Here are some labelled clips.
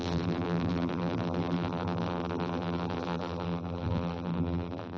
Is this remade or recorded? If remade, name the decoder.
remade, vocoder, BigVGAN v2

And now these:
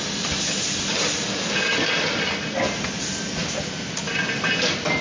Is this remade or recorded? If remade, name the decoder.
recorded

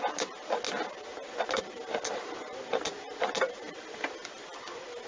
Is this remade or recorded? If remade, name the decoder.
recorded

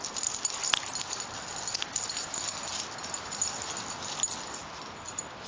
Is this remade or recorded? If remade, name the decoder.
recorded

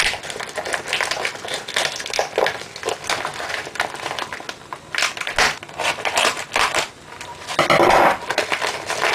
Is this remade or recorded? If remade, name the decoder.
recorded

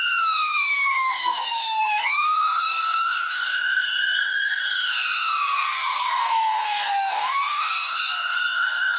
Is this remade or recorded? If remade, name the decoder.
remade, codec, DAC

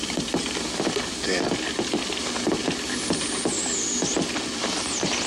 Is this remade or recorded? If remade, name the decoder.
remade, vocoder, BigVGAN v2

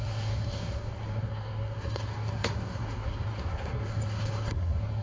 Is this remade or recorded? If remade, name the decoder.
remade, codec, SNAC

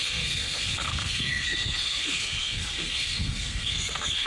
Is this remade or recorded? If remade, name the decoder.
remade, codec, SNAC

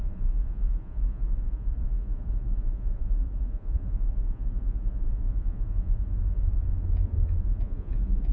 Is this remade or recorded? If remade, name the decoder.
remade, vocoder, Vocos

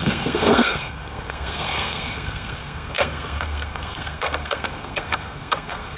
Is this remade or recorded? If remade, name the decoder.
remade, codec, SNAC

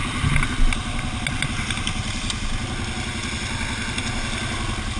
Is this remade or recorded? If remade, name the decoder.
recorded